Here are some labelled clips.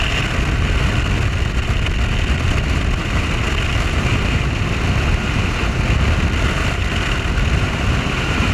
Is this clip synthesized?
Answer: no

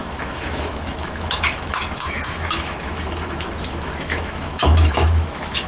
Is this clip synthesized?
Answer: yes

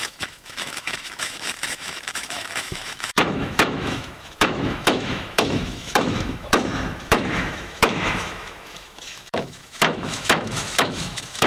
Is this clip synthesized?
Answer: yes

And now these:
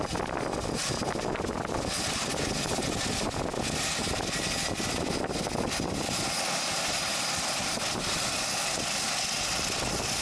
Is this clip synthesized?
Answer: no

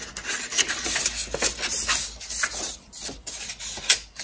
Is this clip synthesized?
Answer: no